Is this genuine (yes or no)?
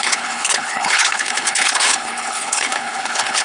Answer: no